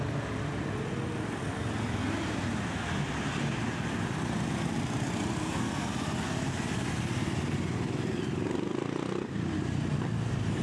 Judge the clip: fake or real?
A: real